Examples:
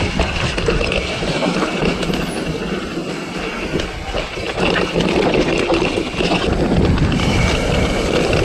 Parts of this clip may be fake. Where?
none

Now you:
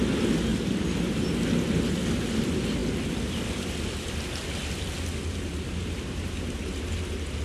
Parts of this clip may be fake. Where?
0.5-1.2 (vocoder, BigVGAN v2)

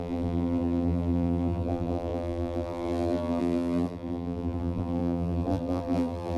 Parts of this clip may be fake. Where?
0.0-6.4 (vocoder, BigVGAN v2)

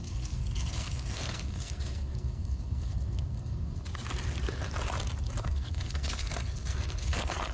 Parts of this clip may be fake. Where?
0.0-3.9 (codec, SNAC); 5.4-7.5

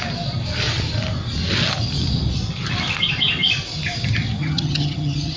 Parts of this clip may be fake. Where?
4.4-5.4 (vocoder, HiFi-GAN)